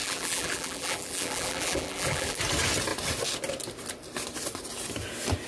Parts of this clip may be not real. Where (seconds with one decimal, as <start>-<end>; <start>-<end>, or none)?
0.0-2.4